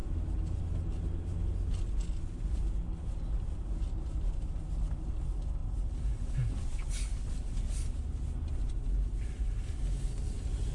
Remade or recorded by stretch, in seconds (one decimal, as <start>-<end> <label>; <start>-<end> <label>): 0.0-10.7 recorded